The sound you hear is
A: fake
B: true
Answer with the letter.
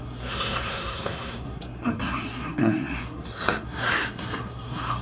A